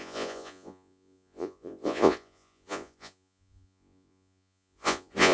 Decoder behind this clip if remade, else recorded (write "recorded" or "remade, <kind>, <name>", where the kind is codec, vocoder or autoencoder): remade, vocoder, Vocos